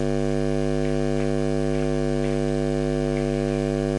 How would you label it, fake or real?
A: real